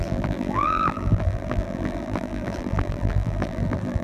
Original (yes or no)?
no